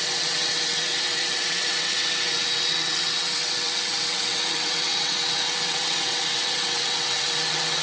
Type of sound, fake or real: fake